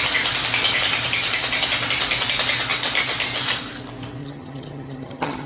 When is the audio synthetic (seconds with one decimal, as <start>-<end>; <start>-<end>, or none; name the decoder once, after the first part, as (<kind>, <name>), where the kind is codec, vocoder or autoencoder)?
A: 4.2-5.5 (vocoder, HiFi-GAN)